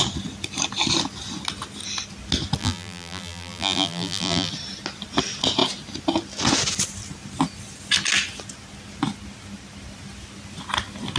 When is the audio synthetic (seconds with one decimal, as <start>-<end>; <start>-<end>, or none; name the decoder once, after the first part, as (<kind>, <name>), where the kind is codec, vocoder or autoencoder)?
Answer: 2.6-4.5 (vocoder, BigVGAN v2)